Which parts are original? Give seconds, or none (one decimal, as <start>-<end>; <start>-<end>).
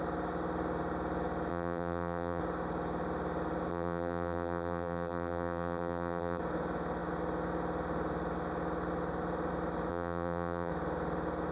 0.0-1.5; 2.4-3.7; 6.4-9.9; 10.7-11.5